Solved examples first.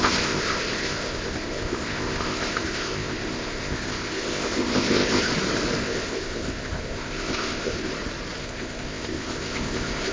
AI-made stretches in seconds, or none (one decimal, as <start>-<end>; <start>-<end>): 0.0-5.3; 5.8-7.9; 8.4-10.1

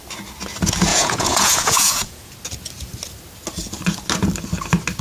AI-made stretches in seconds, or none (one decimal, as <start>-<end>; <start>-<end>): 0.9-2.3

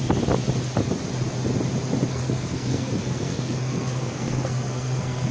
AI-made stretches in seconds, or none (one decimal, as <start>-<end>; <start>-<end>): 2.1-5.3